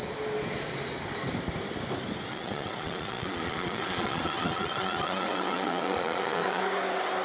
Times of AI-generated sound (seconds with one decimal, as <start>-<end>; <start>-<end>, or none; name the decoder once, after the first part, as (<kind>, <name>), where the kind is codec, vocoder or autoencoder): 2.3-6.6 (vocoder, Vocos)